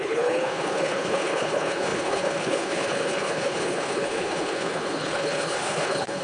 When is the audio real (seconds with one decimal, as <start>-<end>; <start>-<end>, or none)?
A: none